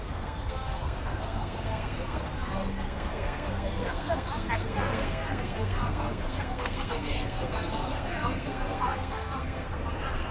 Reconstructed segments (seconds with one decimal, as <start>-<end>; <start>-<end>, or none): 0.0-10.3